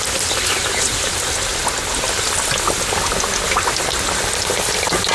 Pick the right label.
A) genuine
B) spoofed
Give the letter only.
A